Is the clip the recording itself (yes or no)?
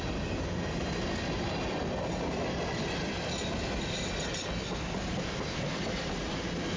yes